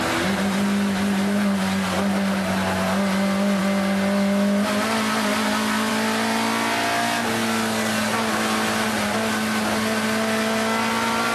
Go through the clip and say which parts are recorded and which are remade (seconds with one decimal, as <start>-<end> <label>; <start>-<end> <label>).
0.0-11.3 recorded